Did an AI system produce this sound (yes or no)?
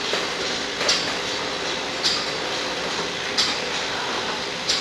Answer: no